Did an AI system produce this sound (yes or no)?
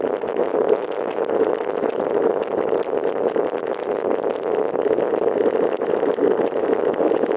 no